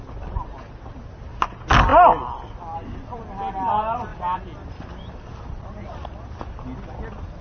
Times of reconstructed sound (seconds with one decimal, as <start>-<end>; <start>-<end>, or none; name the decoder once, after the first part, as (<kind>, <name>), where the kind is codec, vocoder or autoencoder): none